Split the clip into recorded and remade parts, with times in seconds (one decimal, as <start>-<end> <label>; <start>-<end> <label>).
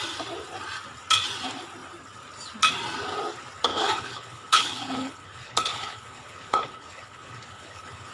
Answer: 0.0-3.7 recorded; 3.7-8.1 remade